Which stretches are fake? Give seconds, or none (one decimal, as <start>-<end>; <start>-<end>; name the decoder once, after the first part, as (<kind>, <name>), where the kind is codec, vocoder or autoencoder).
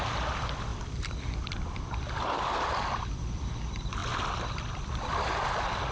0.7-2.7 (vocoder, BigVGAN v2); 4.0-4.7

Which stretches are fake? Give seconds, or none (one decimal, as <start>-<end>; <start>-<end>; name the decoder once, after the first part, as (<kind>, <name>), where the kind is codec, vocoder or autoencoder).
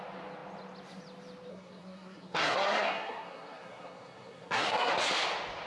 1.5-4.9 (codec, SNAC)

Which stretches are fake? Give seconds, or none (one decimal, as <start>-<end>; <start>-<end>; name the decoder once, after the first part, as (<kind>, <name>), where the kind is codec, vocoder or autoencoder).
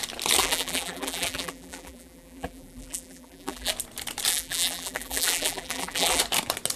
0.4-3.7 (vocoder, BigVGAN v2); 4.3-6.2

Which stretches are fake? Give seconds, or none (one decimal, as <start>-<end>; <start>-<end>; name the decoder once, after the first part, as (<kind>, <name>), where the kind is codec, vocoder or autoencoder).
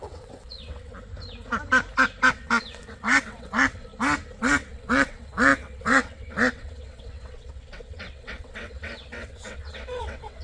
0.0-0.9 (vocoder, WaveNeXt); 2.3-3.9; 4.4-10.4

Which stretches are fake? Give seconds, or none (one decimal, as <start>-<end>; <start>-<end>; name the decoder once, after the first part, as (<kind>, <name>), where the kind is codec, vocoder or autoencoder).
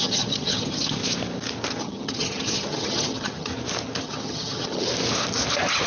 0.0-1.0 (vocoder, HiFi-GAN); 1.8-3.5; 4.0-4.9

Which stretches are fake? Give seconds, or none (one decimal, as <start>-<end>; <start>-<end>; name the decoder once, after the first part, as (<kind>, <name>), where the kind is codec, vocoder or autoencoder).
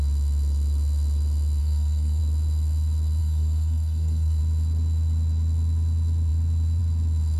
1.6-2.2 (codec, SNAC); 3.2-4.4